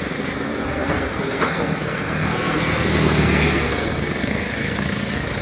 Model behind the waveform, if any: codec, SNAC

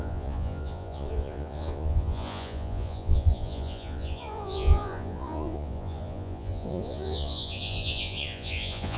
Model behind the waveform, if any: vocoder, Vocos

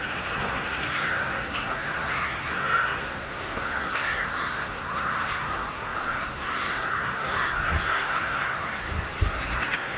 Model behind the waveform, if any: codec, SNAC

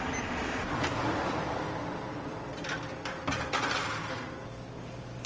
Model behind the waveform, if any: none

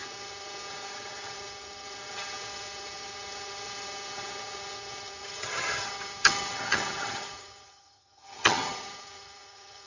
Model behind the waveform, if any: vocoder, HiFi-GAN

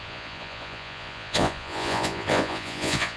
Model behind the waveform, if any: vocoder, Vocos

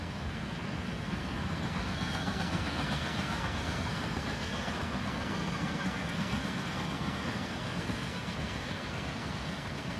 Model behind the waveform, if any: codec, SNAC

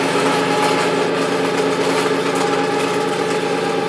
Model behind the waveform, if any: none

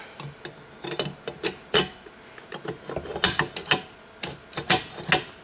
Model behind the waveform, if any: none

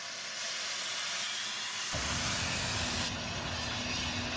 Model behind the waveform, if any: none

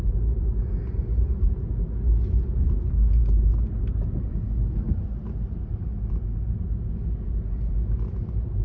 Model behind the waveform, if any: none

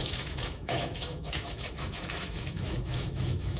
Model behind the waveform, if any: autoencoder, DAC-VAE